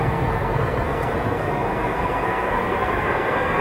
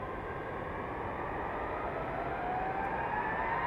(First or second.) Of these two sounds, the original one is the second